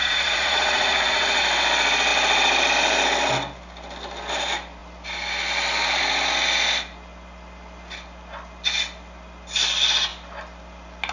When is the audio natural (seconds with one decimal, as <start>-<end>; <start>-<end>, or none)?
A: 1.4-11.1